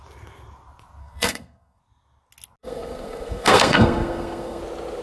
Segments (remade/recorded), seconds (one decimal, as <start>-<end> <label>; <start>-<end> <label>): 0.0-1.0 recorded; 1.0-1.8 remade; 1.8-2.6 recorded; 2.6-4.6 remade; 4.6-5.0 recorded